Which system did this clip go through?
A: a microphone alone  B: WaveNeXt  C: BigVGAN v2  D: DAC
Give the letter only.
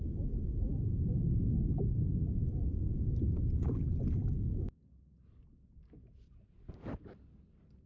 A